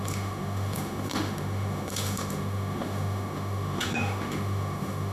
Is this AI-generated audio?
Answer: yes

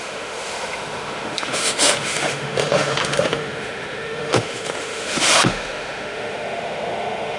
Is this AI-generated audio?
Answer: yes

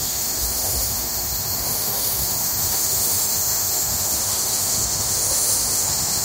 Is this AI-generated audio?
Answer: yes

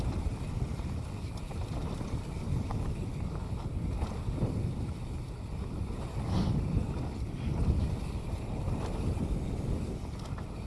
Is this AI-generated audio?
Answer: no